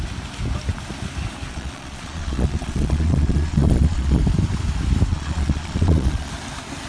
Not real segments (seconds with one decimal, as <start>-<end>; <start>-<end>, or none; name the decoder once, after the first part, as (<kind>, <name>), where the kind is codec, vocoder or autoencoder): 1.5-4.2 (vocoder, Vocos); 5.1-6.3